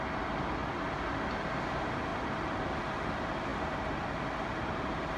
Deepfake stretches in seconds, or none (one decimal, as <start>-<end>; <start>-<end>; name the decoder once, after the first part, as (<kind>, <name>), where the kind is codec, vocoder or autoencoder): 3.5-4.6 (vocoder, BigVGAN v2)